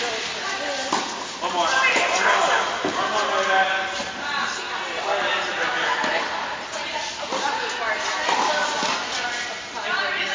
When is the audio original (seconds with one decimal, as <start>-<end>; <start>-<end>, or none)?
0.0-10.3